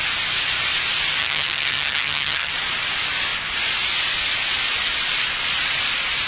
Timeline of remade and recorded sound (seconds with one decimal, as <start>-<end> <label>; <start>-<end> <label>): 0.0-1.2 recorded; 1.2-2.5 remade; 2.5-6.3 recorded